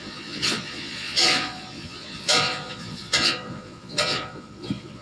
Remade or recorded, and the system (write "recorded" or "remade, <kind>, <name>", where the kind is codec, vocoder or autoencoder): remade, vocoder, Vocos